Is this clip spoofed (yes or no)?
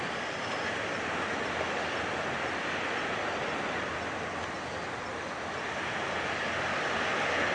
no